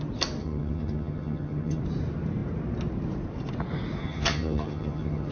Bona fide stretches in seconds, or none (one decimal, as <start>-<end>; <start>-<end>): 0.0-0.4; 1.8-4.0